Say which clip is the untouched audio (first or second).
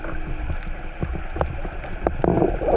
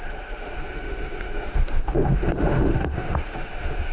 first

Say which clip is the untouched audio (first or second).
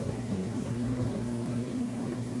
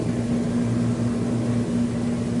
second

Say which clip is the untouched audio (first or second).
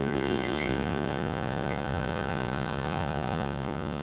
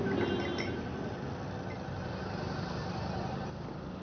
second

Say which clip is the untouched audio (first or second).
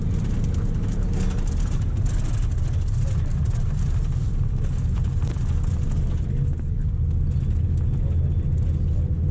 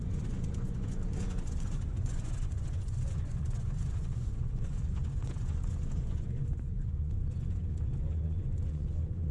first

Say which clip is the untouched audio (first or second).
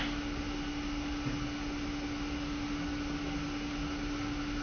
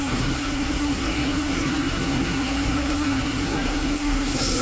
first